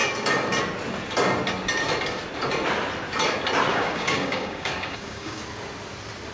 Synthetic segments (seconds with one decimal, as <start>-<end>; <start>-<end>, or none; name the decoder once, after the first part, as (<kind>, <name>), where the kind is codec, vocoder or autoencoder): 3.7-5.4 (codec, DAC)

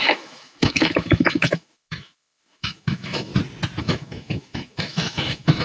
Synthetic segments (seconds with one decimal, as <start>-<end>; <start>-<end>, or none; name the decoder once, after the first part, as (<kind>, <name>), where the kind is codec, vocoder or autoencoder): 0.0-3.3 (autoencoder, DAC-VAE); 3.8-5.6